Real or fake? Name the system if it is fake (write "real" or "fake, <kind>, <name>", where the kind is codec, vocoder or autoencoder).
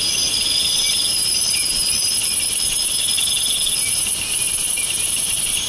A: real